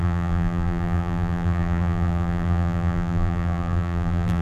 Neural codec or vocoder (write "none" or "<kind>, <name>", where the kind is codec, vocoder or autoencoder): vocoder, BigVGAN v2